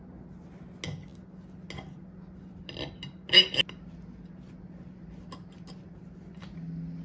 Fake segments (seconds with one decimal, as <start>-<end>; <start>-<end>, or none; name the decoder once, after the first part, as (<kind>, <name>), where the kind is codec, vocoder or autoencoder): none

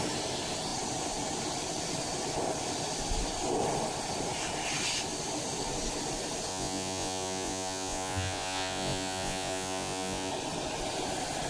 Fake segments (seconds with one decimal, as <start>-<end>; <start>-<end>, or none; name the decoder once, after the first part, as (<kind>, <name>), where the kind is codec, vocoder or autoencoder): 6.5-10.3 (vocoder, Vocos)

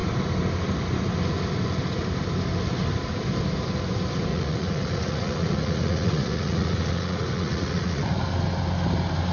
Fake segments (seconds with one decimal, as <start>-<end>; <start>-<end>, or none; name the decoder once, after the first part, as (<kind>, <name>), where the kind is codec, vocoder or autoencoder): 4.3-8.2 (vocoder, Vocos)

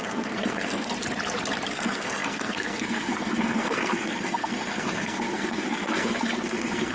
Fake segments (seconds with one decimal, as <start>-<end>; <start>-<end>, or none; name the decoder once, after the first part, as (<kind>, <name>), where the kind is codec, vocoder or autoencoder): 0.0-0.9 (codec, SNAC); 1.7-6.9

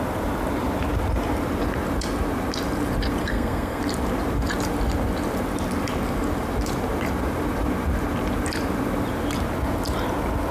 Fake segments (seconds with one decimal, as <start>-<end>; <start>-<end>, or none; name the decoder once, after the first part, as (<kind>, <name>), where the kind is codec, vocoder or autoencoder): 3.2-3.8 (codec, SNAC)